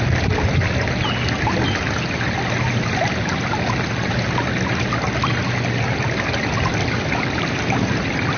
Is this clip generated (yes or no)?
no